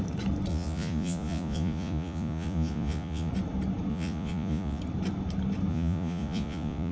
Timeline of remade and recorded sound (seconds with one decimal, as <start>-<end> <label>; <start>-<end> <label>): 0.0-0.5 recorded; 0.5-3.3 remade; 3.3-3.9 recorded; 3.9-4.8 remade; 4.8-5.7 recorded; 5.7-6.9 remade